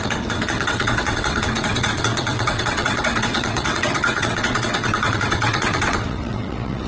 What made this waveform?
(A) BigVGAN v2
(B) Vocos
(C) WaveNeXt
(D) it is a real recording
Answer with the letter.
C